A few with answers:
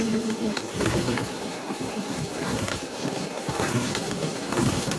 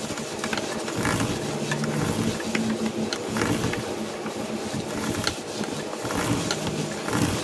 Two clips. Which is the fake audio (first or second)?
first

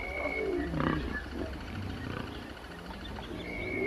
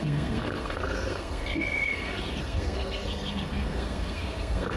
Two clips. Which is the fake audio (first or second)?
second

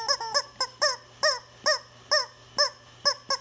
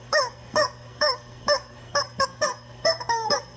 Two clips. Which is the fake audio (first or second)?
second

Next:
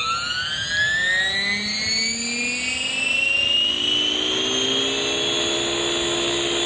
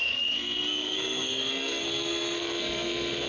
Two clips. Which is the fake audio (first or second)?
second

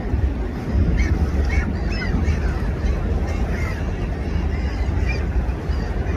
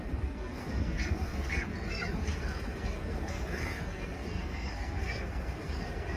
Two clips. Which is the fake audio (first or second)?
second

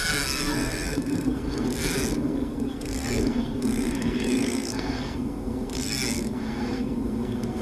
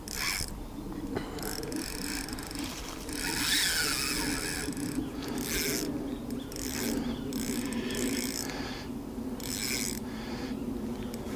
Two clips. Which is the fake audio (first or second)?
first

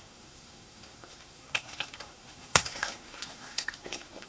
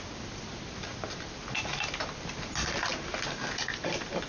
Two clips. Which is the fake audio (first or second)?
first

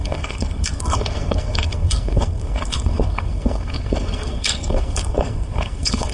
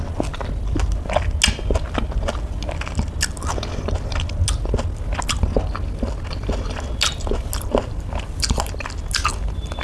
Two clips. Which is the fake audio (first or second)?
first